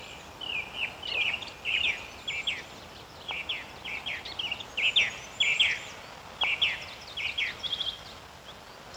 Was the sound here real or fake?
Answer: real